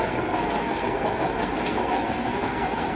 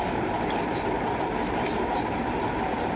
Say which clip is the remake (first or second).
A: first